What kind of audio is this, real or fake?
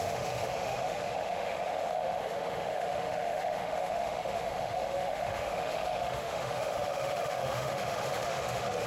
fake